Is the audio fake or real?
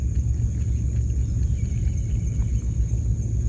real